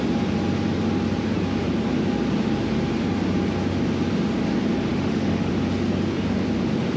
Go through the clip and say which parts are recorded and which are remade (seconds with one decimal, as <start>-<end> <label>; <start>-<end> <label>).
0.0-4.9 recorded; 4.9-5.5 remade; 5.5-7.0 recorded